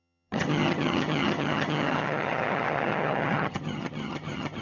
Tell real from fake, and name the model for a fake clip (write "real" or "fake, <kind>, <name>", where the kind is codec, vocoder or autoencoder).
fake, vocoder, HiFi-GAN